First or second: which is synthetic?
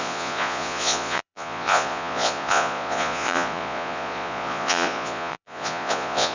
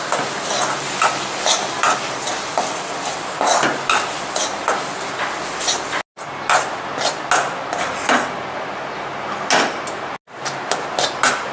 first